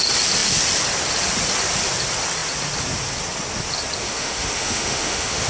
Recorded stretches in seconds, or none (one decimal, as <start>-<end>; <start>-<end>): 0.0-4.0